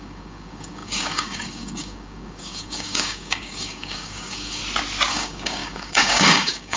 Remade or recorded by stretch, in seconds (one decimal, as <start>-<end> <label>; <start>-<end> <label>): 0.0-4.6 remade; 4.6-5.1 recorded; 5.1-6.8 remade